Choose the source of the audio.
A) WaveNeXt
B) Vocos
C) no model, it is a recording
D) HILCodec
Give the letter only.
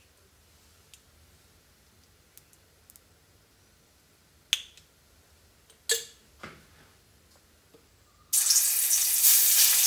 C